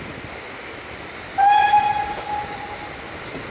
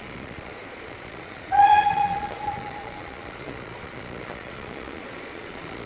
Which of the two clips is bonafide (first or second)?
first